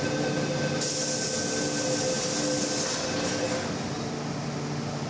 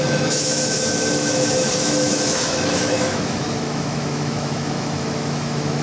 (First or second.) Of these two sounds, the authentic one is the first